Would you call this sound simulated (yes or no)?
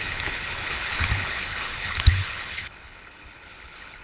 yes